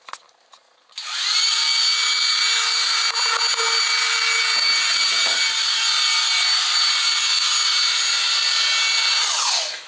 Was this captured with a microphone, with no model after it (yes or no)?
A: yes